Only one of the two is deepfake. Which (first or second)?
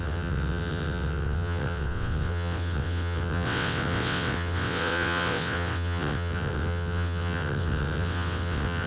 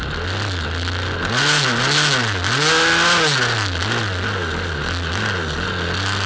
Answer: first